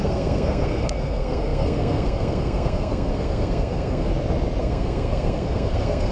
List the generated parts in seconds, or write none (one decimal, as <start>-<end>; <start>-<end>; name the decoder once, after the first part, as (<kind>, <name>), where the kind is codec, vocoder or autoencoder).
0.0-4.1 (codec, SNAC); 4.6-6.1